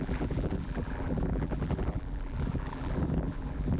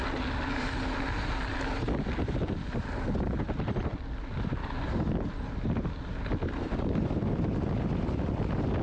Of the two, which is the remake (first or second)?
first